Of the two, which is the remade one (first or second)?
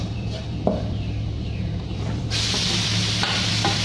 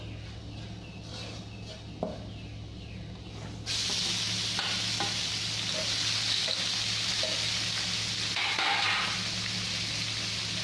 first